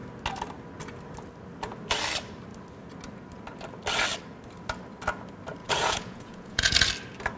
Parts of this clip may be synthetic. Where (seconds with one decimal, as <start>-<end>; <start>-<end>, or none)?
5.6-6.9